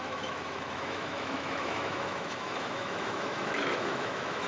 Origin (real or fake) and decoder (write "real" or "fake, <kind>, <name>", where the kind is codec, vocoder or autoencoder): fake, autoencoder, DAC-VAE